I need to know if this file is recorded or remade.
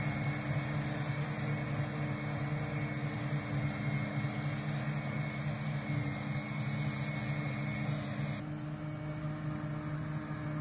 recorded